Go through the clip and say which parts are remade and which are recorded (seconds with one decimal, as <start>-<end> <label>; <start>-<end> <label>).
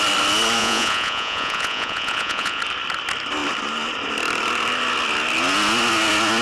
0.0-0.6 recorded; 0.6-2.6 remade; 2.6-6.4 recorded